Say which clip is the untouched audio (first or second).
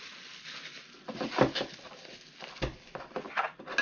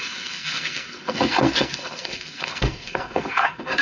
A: first